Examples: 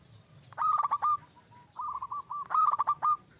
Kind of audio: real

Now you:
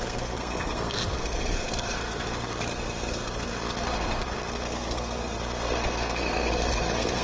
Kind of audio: fake